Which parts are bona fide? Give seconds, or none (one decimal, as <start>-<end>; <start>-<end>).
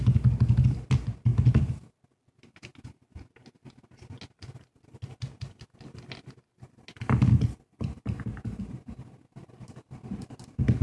0.0-10.8